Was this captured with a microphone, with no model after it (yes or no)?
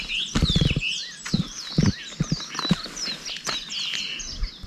yes